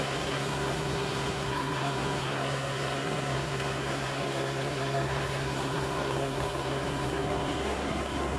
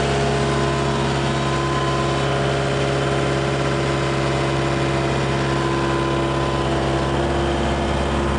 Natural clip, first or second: second